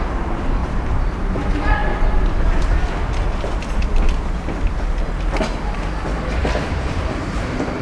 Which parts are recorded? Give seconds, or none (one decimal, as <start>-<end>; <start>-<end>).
0.0-0.6; 1.2-6.4